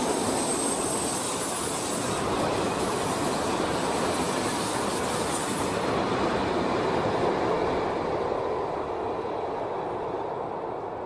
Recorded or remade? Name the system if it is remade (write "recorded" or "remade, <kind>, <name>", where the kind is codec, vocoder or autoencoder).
recorded